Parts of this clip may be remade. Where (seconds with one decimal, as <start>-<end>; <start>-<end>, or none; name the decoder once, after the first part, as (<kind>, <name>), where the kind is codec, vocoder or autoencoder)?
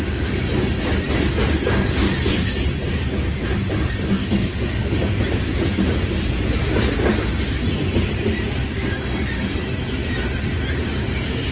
4.2-5.2 (codec, DAC)